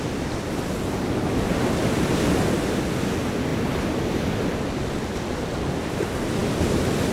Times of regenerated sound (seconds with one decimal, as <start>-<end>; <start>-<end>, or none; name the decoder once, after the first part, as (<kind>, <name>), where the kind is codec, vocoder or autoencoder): none